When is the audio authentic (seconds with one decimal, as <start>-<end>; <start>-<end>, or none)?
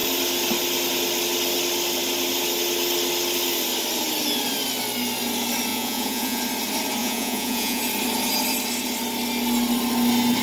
0.0-5.7; 6.4-7.0; 7.8-10.4